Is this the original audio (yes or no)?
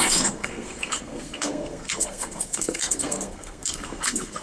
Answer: no